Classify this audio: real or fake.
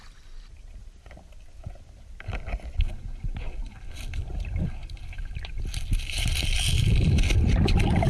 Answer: real